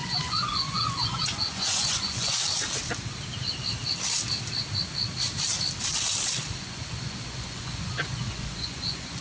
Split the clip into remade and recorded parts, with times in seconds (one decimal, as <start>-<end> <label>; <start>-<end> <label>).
0.0-2.4 remade; 2.4-6.6 recorded; 6.6-9.2 remade